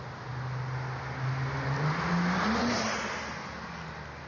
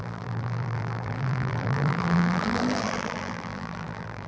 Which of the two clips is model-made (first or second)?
second